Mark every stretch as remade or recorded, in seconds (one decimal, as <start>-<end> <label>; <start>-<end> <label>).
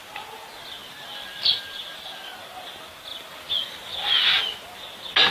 0.0-0.8 recorded; 0.8-1.6 remade; 1.6-3.1 recorded; 3.1-4.1 remade; 4.1-5.3 recorded